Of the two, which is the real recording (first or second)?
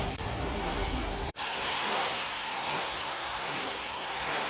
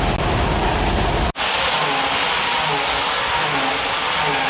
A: second